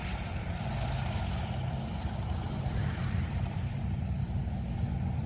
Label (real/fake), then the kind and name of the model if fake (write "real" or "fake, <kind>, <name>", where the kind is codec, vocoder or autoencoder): fake, vocoder, BigVGAN v2